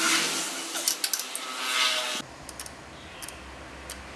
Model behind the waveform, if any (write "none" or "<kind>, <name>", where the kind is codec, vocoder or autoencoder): none